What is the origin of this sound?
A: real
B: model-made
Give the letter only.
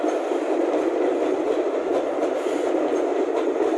A